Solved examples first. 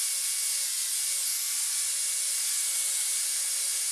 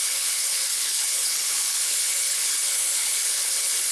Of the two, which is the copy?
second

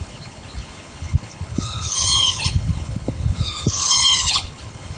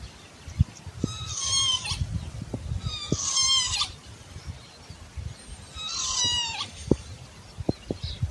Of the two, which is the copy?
first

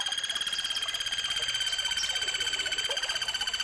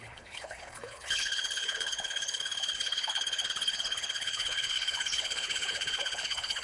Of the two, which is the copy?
second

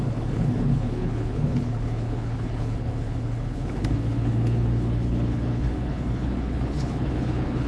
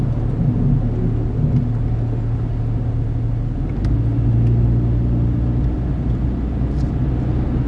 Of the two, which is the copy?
first